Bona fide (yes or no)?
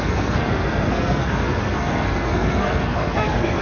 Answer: no